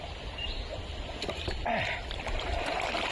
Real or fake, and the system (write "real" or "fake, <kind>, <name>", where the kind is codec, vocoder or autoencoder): real